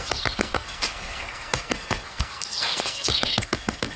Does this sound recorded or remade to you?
remade